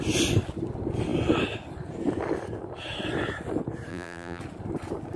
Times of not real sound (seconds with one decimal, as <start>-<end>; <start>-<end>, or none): 3.9-4.4